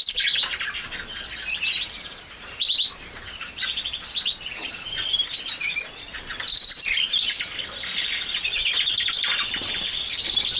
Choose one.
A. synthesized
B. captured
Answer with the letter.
A